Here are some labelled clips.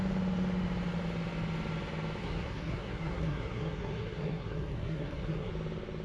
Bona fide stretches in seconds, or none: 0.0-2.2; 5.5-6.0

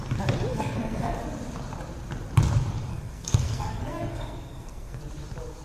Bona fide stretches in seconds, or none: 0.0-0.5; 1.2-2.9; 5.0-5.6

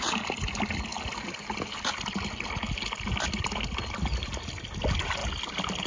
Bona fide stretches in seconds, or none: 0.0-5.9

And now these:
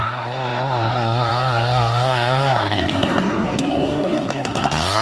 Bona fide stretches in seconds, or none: none

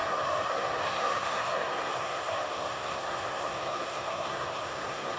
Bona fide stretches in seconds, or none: none

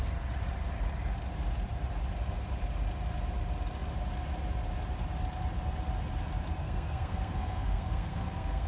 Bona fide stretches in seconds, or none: 0.0-6.6